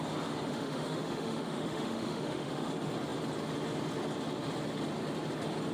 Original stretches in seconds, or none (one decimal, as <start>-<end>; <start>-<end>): 0.0-0.5; 2.7-5.7